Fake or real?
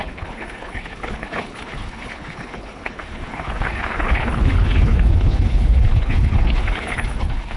fake